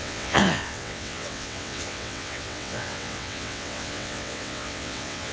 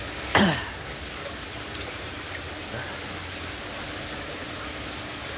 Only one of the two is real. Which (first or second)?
second